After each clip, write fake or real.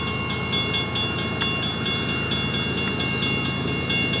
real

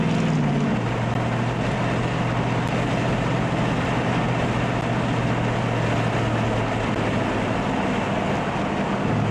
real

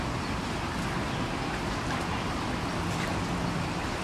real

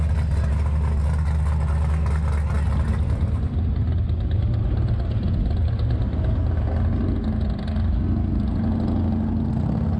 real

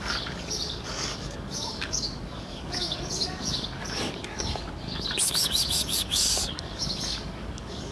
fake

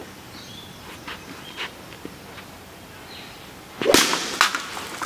real